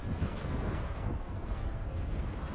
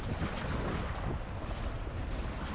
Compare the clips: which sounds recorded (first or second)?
second